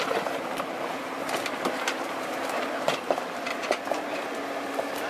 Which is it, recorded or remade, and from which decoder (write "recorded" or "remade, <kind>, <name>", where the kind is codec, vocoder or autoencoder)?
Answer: remade, vocoder, BigVGAN v2